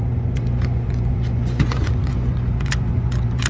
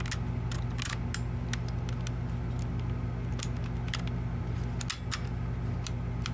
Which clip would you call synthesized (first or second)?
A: first